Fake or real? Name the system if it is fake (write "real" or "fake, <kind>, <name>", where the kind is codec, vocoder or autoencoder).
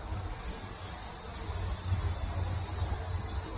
real